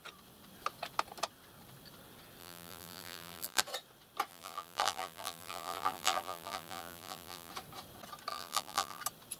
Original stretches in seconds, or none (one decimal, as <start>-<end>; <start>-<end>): 0.0-2.4; 3.6-4.3; 7.5-8.3; 9.0-9.4